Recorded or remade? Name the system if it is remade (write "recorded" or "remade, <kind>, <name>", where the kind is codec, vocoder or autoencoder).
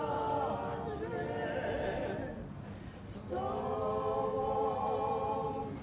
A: remade, vocoder, BigVGAN v2